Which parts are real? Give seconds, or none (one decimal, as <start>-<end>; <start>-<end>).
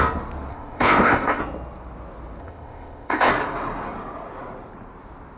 0.0-0.5; 1.4-2.4; 3.3-5.4